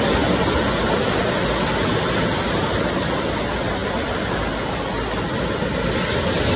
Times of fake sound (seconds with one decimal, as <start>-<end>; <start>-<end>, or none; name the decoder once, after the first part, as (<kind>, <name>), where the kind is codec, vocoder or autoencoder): 3.8-5.4 (vocoder, BigVGAN v2)